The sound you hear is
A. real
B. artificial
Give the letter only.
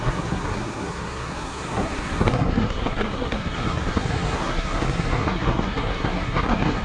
B